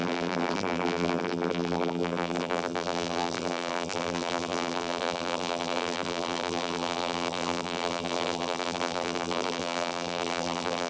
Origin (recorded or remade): remade